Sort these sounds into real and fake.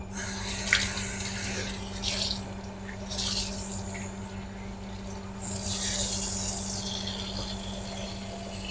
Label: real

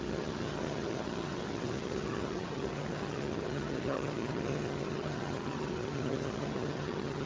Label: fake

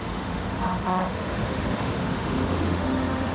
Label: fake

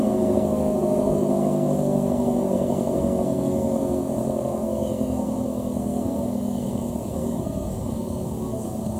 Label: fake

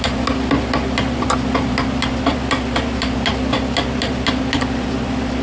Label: real